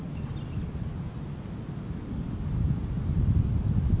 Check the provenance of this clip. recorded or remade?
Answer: recorded